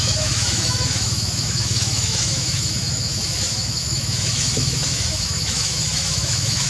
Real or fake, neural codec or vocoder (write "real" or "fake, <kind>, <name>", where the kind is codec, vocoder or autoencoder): fake, autoencoder, DAC-VAE